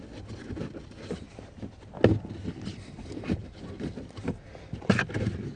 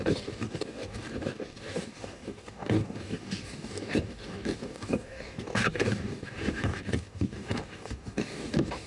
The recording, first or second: first